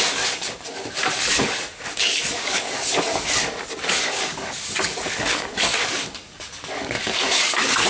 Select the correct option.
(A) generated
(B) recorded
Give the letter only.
A